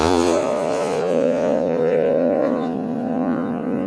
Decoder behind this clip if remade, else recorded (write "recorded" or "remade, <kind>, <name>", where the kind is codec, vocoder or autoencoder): remade, vocoder, Vocos